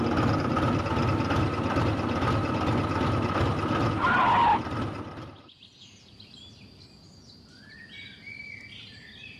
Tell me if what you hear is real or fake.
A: real